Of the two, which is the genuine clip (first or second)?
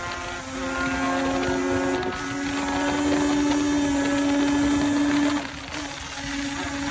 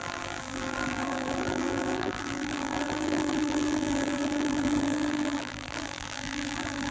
first